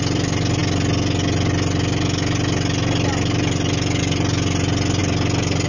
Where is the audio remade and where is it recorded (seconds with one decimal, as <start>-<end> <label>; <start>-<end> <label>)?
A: 0.0-5.7 recorded